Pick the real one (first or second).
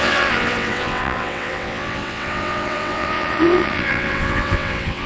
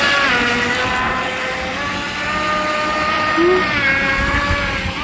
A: second